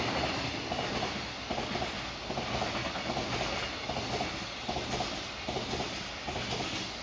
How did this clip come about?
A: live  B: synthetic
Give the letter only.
A